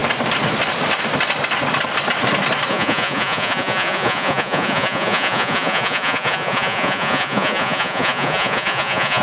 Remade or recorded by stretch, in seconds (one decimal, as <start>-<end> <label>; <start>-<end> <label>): 0.0-2.7 recorded; 2.7-9.2 remade